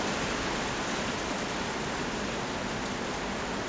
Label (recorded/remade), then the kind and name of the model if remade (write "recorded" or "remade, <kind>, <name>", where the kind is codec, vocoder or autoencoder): recorded